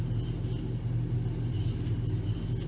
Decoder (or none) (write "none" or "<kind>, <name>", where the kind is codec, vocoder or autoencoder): none